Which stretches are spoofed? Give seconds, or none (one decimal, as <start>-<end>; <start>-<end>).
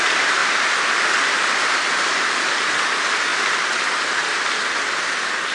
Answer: 0.4-2.9; 3.3-4.6